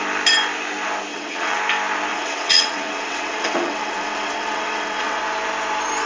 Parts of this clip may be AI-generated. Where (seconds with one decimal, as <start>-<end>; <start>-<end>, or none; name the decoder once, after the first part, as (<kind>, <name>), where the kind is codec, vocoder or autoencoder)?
1.1-1.6 (vocoder, WaveNeXt); 2.1-5.2